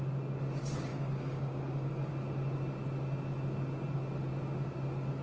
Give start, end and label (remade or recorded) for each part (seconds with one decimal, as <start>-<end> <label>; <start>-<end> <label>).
0.0-0.9 recorded; 0.9-2.1 remade; 2.1-5.2 recorded